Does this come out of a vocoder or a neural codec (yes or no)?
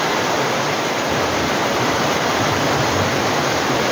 no